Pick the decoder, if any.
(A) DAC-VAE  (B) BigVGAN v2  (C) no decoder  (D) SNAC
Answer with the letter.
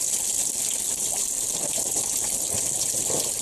C